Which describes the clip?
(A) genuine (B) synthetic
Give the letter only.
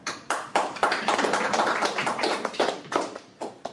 B